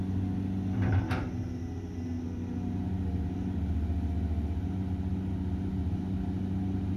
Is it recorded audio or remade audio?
recorded